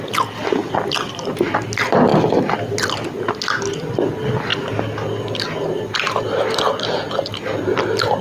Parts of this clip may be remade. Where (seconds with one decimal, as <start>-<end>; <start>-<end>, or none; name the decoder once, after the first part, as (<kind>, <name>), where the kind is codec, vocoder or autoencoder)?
0.6-1.2 (vocoder, BigVGAN v2)